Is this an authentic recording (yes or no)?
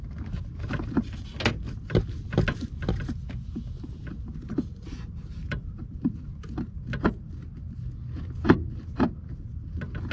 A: yes